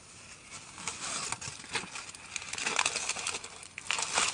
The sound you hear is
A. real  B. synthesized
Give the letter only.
A